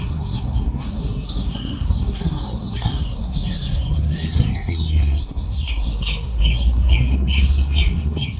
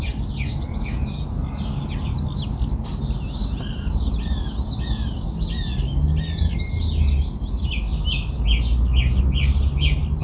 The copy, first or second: first